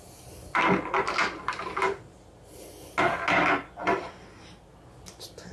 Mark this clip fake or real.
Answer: real